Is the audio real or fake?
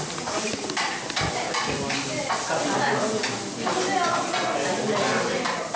real